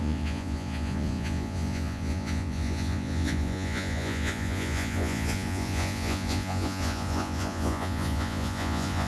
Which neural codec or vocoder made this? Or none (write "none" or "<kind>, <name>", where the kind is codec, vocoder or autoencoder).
vocoder, Vocos